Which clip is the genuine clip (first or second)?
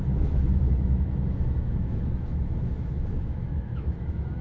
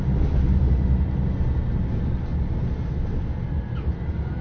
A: second